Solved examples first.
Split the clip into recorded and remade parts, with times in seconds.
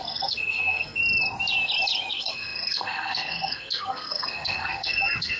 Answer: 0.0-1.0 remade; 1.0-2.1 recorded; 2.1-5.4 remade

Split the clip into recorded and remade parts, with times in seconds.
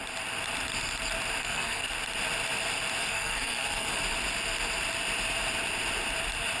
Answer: 0.0-1.4 recorded; 1.4-1.9 remade; 1.9-3.0 recorded; 3.0-4.0 remade; 4.0-6.6 recorded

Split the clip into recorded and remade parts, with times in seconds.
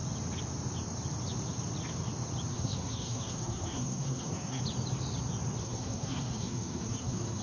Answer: 0.0-2.5 recorded; 2.5-4.6 remade; 4.6-5.6 recorded; 5.6-7.4 remade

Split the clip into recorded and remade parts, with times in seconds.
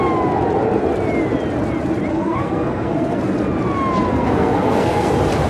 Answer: 0.0-2.1 recorded; 2.1-3.2 remade; 3.2-4.1 recorded; 4.1-5.1 remade; 5.1-5.5 recorded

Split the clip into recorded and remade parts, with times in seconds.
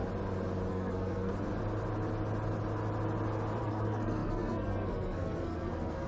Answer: 0.0-0.7 recorded; 0.7-1.3 remade; 1.3-3.6 recorded; 3.6-6.1 remade